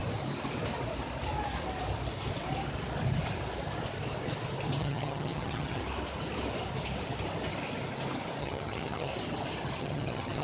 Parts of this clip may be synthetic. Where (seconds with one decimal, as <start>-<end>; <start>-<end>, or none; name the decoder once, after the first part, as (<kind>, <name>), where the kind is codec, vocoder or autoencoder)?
4.8-5.8 (vocoder, HiFi-GAN); 8.4-9.1; 9.8-10.4